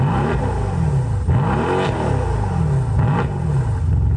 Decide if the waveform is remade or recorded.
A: recorded